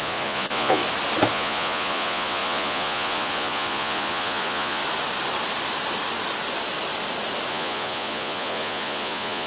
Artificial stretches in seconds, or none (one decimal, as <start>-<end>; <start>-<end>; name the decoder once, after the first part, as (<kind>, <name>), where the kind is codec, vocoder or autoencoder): 0.0-0.8 (vocoder, Vocos); 1.3-4.8; 7.5-9.5